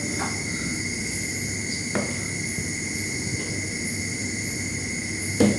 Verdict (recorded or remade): recorded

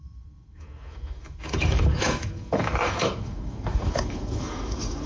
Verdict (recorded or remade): remade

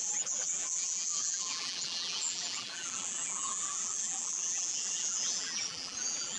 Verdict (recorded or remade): remade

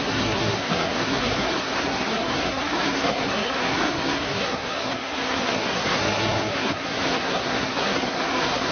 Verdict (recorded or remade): remade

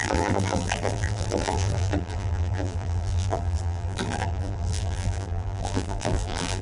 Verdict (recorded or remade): remade